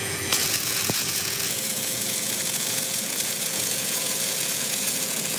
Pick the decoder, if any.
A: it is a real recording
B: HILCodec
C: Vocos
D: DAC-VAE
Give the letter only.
C